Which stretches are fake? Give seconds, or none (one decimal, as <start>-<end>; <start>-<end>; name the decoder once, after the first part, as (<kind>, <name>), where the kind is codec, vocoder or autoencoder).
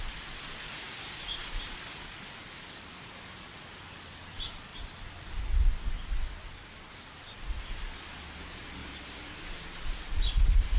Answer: none